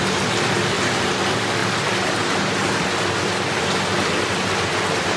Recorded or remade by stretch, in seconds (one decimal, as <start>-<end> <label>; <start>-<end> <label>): 0.0-5.2 recorded